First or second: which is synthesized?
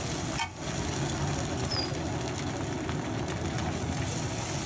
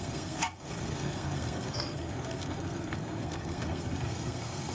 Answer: second